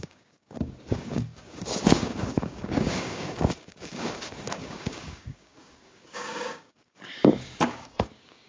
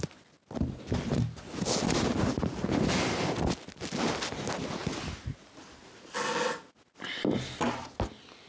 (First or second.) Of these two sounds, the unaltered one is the second